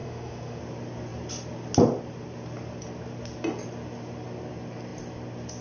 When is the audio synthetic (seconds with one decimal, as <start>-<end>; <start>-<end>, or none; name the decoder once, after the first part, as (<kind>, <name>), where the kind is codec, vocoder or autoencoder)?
0.0-0.6 (autoencoder, DAC-VAE)